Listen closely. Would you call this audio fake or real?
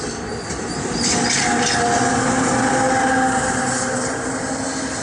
real